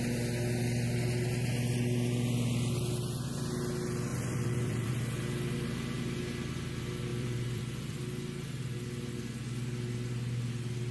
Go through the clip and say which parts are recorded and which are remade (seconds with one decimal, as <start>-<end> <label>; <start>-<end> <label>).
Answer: 0.0-4.1 recorded; 4.1-4.9 remade; 4.9-7.1 recorded; 7.1-8.0 remade; 8.0-10.9 recorded